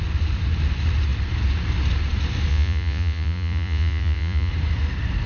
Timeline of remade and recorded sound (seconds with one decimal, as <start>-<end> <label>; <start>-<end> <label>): 0.0-2.5 recorded; 2.5-4.5 remade; 4.5-5.3 recorded